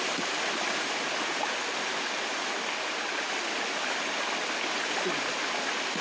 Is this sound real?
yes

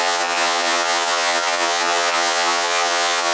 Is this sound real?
no